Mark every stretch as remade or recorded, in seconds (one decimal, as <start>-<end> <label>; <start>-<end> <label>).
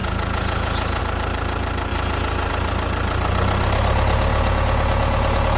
0.0-1.0 remade; 1.0-4.3 recorded; 4.3-5.6 remade